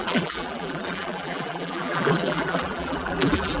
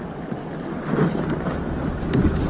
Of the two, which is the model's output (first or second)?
first